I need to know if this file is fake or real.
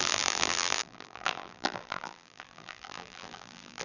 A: fake